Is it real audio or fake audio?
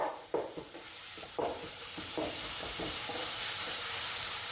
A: fake